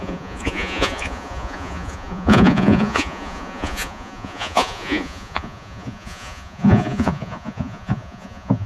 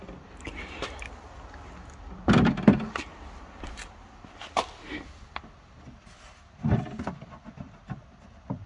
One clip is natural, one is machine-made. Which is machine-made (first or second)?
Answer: first